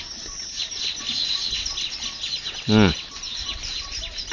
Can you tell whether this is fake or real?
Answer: real